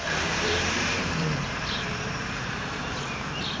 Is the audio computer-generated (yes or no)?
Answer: yes